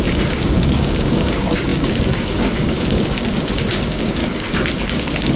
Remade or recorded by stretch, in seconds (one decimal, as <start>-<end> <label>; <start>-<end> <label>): 0.0-4.2 remade; 4.2-4.8 recorded; 4.8-5.4 remade